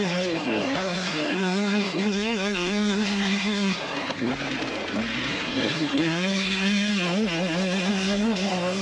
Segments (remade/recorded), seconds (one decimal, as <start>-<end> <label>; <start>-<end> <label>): 0.0-4.3 remade; 4.3-5.3 recorded; 5.3-6.9 remade; 6.9-7.9 recorded; 7.9-8.8 remade